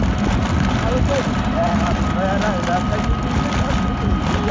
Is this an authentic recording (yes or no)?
yes